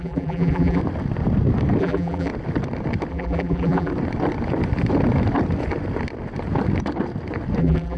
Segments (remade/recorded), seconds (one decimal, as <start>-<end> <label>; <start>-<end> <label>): 0.0-0.8 remade; 0.8-1.8 recorded; 1.8-2.3 remade; 2.3-3.1 recorded; 3.1-3.9 remade; 3.9-7.6 recorded; 7.6-8.0 remade